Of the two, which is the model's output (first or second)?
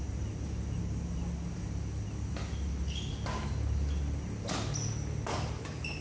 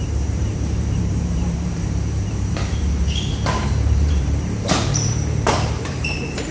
second